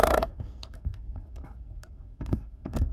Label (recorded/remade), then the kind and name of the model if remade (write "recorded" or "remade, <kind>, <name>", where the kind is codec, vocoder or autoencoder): remade, codec, SNAC